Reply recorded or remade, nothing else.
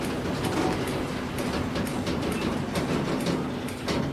recorded